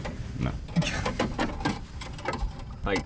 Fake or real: real